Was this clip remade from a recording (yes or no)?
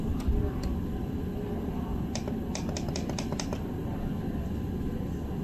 no